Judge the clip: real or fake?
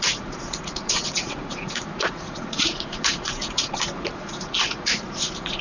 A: fake